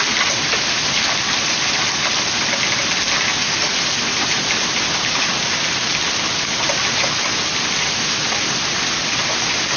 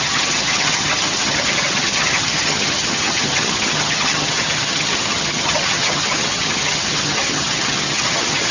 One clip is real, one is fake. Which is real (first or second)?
first